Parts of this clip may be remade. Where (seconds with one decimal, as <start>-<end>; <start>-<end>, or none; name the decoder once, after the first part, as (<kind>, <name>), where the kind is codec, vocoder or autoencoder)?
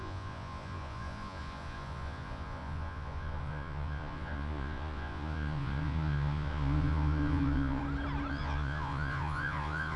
0.0-7.8 (vocoder, Vocos); 8.3-10.0